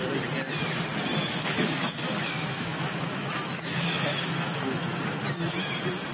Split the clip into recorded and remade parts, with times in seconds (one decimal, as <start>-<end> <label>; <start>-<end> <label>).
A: 0.0-1.2 recorded; 1.2-4.9 remade; 4.9-6.1 recorded

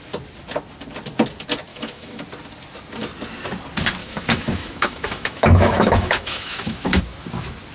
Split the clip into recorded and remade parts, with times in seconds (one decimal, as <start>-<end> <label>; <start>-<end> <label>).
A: 0.0-1.7 recorded; 1.7-2.2 remade; 2.2-4.0 recorded; 4.0-7.0 remade; 7.0-7.7 recorded

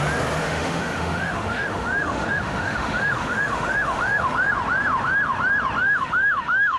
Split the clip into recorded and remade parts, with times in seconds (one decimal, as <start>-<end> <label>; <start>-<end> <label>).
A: 0.0-0.4 recorded; 0.4-4.5 remade; 4.5-5.8 recorded; 5.8-6.8 remade

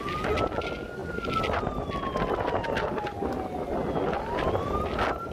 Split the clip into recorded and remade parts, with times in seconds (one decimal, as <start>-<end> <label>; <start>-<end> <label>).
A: 0.0-5.3 recorded

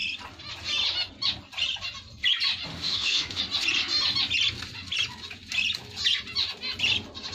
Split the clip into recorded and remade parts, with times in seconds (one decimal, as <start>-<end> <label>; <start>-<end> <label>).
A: 0.0-2.7 recorded; 2.7-3.4 remade; 3.4-7.3 recorded

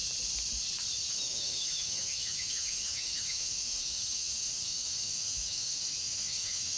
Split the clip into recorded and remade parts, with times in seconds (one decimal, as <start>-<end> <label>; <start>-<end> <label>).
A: 0.0-1.1 recorded; 1.1-6.8 remade

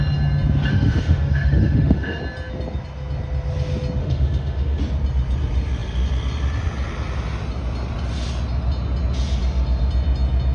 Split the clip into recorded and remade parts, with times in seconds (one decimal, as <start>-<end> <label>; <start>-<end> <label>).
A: 0.0-0.7 recorded; 0.7-2.2 remade; 2.2-4.0 recorded; 4.0-4.8 remade; 4.8-10.5 recorded

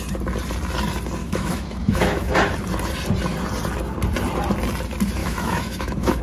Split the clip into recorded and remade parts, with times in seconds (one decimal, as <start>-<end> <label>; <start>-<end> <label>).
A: 0.0-1.2 recorded; 1.2-2.3 remade; 2.3-5.2 recorded; 5.2-6.2 remade